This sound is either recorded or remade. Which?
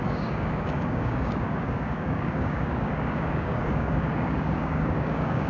remade